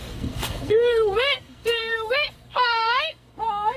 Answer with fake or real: fake